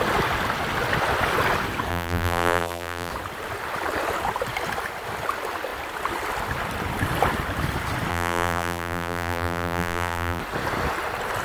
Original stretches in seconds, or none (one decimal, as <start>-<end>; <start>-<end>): 0.0-1.9; 3.1-8.1; 10.4-11.4

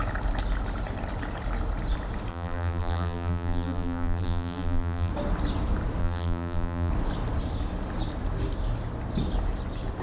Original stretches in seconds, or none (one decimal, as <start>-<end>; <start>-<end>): 0.0-2.3; 5.1-6.0; 6.9-10.0

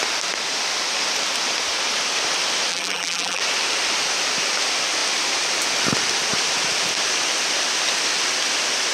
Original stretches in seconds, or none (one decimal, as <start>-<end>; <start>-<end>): 0.0-2.7; 3.4-8.9

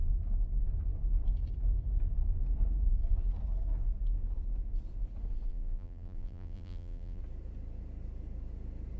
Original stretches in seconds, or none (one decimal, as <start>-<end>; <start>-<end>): 0.0-5.5; 7.2-9.0

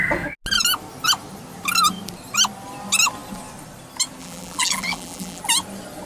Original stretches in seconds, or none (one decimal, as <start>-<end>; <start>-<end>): 0.0-4.2; 5.4-6.1

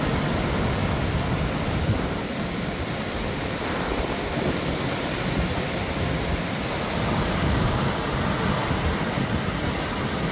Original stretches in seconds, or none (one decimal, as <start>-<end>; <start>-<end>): 0.0-0.8; 2.5-10.3

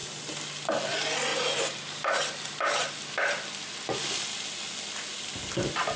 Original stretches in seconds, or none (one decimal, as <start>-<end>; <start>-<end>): 0.0-1.3; 2.9-6.0